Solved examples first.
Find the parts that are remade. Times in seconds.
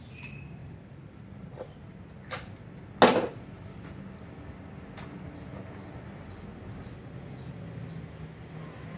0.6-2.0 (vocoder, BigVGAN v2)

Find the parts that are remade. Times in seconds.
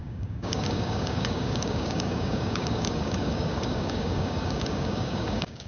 0.0-5.7 (codec, DAC)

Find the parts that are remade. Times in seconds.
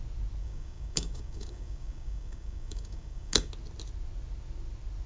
0.4-3.5 (codec, DAC)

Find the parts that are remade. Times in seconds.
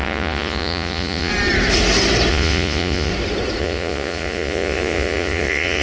0.0-1.3 (vocoder, Vocos); 2.3-3.1; 3.6-5.8